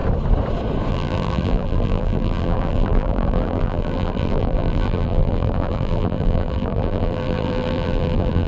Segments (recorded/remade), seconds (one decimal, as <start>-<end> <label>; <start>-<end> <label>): 0.0-0.9 recorded; 0.9-8.5 remade